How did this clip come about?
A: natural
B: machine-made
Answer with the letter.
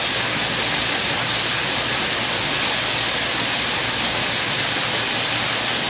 A